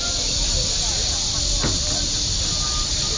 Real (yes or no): yes